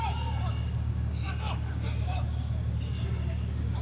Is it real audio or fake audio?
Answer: fake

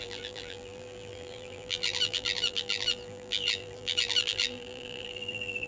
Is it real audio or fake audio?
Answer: fake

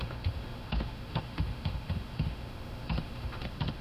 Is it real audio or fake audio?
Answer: fake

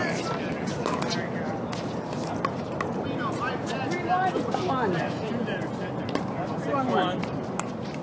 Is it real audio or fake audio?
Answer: real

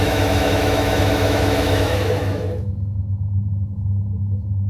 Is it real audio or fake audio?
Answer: fake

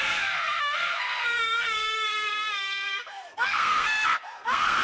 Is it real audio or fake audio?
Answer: fake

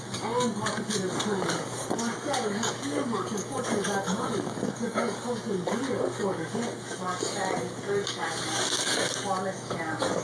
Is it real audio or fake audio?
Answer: fake